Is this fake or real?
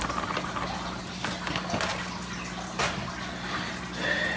real